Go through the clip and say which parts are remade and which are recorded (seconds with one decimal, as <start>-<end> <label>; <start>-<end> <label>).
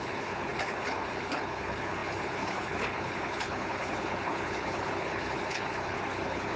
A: 0.0-6.6 remade